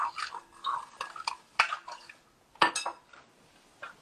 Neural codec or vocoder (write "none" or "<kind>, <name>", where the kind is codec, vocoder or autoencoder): none